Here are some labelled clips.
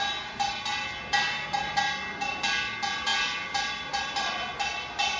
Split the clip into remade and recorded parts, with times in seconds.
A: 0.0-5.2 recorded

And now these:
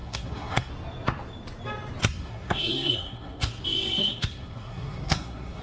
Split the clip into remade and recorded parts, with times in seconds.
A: 0.0-0.7 remade; 0.7-2.0 recorded; 2.0-3.6 remade; 3.6-4.0 recorded; 4.0-5.6 remade

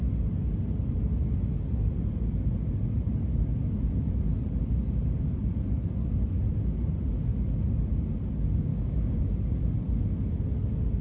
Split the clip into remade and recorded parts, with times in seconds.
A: 0.0-8.7 recorded; 8.7-9.2 remade; 9.2-11.0 recorded